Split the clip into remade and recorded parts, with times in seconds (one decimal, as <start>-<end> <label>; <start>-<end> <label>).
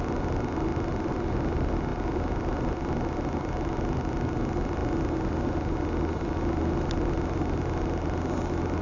0.0-8.8 recorded